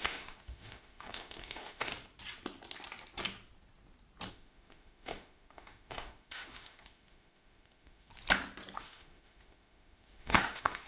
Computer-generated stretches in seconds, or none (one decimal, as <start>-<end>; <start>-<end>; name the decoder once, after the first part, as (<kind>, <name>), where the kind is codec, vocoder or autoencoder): 0.0-1.9 (autoencoder, DAC-VAE); 4.3-8.1; 8.8-10.9